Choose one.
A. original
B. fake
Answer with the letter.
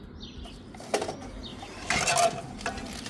A